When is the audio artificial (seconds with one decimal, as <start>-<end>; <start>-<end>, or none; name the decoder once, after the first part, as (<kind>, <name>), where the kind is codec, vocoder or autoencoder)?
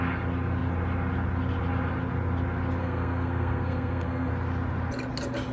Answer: 2.8-4.3 (codec, SNAC)